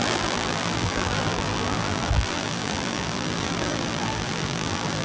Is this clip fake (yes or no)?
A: yes